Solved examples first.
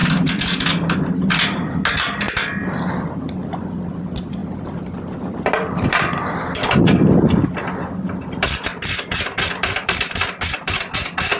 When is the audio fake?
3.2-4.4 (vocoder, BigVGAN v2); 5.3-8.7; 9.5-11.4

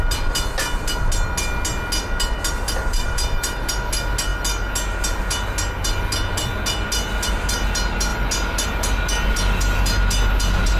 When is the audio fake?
2.9-3.6 (vocoder, BigVGAN v2)

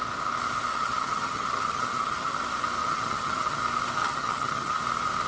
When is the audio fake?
0.7-2.4 (vocoder, HiFi-GAN); 2.8-3.6; 4.0-4.8

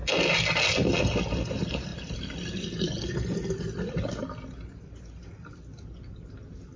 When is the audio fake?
none

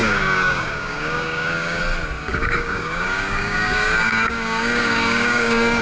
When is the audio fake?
0.0-1.8 (codec, DAC); 2.2-5.8

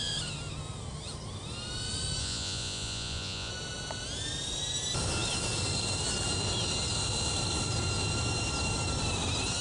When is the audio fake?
2.2-3.5 (vocoder, Vocos)